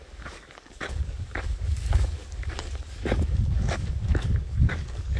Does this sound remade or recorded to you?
remade